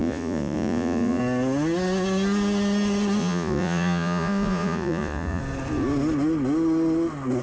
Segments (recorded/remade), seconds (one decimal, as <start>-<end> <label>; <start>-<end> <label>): 0.0-1.2 remade; 1.2-3.2 recorded; 3.2-5.4 remade; 5.4-7.4 recorded